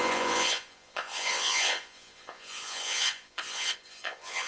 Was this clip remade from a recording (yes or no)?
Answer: yes